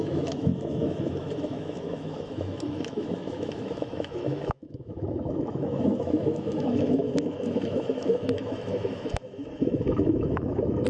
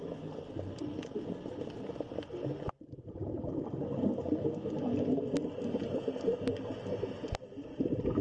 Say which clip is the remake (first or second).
first